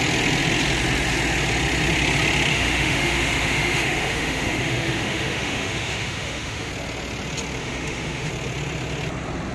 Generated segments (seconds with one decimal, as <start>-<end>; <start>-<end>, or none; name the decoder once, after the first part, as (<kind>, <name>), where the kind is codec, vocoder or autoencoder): 2.5-6.7 (autoencoder, DAC-VAE); 7.6-8.3